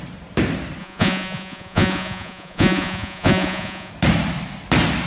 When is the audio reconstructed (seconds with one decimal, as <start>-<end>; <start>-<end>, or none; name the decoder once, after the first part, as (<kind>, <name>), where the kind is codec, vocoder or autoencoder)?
0.8-3.9 (vocoder, Vocos)

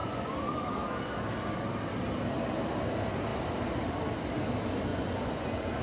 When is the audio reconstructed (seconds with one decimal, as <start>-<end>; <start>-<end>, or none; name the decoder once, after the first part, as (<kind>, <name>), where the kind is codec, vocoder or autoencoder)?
0.0-0.5 (vocoder, Vocos); 4.9-5.8

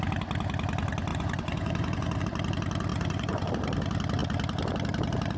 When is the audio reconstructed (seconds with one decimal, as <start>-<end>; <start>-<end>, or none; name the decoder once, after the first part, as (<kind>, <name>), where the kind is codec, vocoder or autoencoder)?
1.1-2.2 (vocoder, Vocos); 2.9-3.5

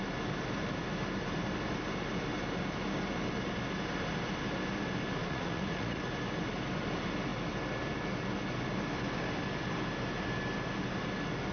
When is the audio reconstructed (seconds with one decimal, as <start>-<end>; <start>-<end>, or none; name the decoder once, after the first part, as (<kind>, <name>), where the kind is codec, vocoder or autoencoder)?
5.2-6.0 (vocoder, Vocos)

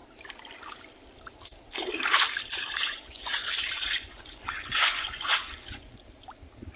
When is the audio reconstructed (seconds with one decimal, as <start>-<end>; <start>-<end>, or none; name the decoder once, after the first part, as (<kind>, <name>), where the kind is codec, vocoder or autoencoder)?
2.8-6.0 (vocoder, Vocos)

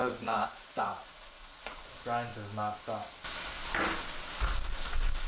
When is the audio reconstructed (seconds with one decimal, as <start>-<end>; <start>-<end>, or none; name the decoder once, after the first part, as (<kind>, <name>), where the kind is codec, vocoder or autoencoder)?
0.0-1.9 (vocoder, Vocos)

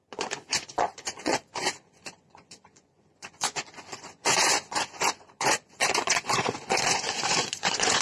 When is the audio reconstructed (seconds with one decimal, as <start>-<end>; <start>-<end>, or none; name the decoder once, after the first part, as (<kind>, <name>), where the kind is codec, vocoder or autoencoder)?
0.0-8.0 (vocoder, Vocos)